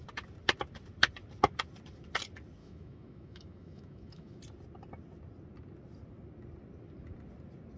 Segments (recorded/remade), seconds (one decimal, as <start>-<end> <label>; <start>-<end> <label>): 0.0-2.6 recorded; 2.6-4.4 remade; 4.4-7.8 recorded